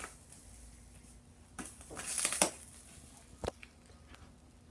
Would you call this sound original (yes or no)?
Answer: yes